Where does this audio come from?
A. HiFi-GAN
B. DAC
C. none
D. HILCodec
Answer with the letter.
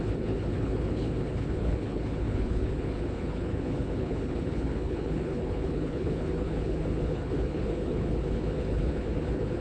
D